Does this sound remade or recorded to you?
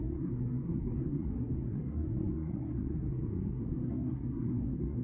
remade